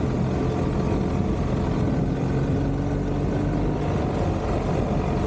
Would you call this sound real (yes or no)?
yes